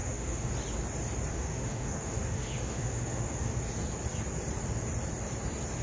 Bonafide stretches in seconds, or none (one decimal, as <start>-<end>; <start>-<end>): 0.5-1.3; 3.6-5.8